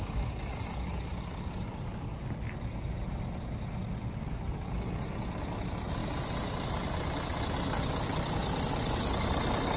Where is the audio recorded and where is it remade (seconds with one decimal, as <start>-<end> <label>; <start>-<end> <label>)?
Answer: 0.0-9.8 recorded